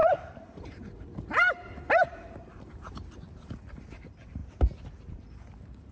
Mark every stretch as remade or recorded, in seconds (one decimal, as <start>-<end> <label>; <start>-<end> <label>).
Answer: 0.0-4.4 remade; 4.4-5.1 recorded; 5.1-5.9 remade